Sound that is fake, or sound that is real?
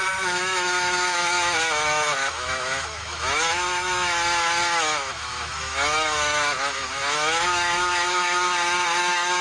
fake